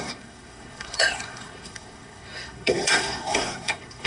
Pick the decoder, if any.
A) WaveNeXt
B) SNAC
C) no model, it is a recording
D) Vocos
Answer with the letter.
B